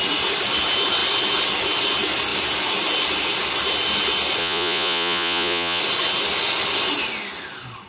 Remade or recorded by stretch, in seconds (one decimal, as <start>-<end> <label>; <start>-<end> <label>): 0.0-4.4 recorded; 4.4-5.8 remade; 5.8-7.9 recorded